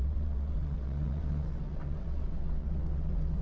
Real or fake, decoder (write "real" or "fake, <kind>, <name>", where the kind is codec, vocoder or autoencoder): fake, vocoder, WaveNeXt